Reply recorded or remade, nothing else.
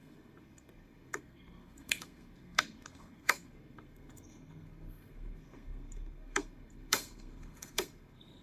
remade